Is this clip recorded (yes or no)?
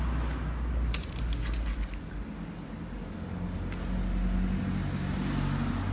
yes